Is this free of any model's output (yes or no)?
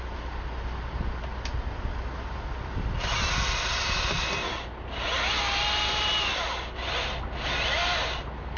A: yes